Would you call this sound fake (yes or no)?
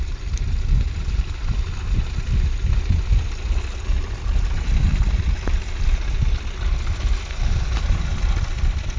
no